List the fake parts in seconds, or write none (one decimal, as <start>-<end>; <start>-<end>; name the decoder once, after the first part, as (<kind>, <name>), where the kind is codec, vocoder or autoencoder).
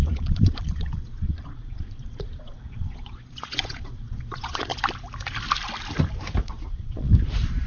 0.0-4.7 (vocoder, Vocos); 6.4-7.1